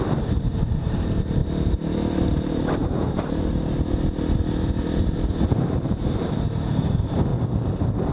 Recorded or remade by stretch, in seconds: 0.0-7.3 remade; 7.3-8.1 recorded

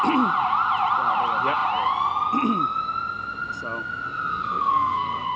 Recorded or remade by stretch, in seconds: 0.0-4.3 recorded; 4.3-5.4 remade

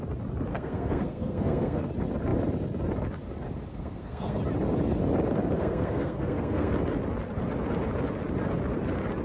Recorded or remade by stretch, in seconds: 0.0-0.5 recorded; 0.5-1.9 remade; 1.9-3.7 recorded; 3.7-4.4 remade; 4.4-5.6 recorded; 5.6-6.7 remade; 6.7-9.2 recorded

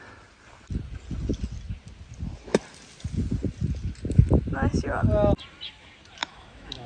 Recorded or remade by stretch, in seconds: 0.0-6.2 recorded; 6.2-6.9 remade

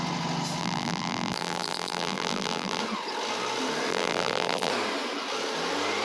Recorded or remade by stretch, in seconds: 0.0-0.6 recorded; 0.6-2.8 remade; 2.8-3.9 recorded; 3.9-4.7 remade; 4.7-6.0 recorded

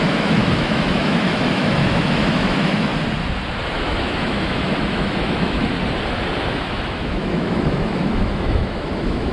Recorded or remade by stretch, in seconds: 0.0-2.9 remade; 2.9-3.7 recorded; 3.7-5.7 remade; 5.7-6.5 recorded; 6.5-9.3 remade

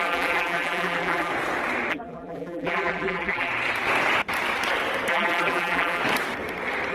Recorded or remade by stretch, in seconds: 0.0-1.3 remade; 1.3-1.9 recorded; 1.9-3.5 remade; 3.5-5.1 recorded; 5.1-6.0 remade; 6.0-6.9 recorded